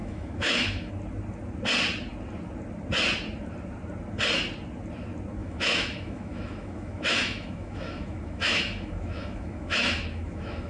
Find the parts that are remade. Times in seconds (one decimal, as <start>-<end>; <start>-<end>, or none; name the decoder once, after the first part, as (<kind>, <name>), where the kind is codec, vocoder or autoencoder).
0.0-0.9 (autoencoder, DAC-VAE); 5.4-10.7